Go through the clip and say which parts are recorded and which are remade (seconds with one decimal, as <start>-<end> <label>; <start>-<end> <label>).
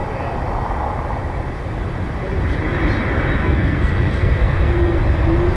0.0-3.4 recorded; 3.4-5.0 remade; 5.0-5.6 recorded